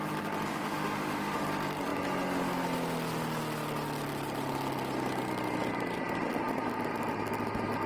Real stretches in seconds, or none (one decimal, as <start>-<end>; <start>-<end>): 0.0-0.5; 1.4-7.9